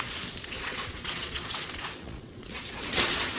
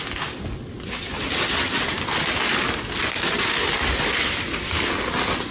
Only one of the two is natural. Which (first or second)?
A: second